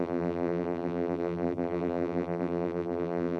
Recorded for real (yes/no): no